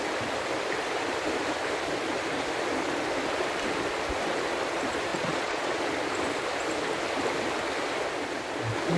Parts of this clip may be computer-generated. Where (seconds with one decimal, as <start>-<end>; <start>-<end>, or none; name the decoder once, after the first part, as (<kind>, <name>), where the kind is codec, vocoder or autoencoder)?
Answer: 5.1-5.8 (vocoder, Vocos)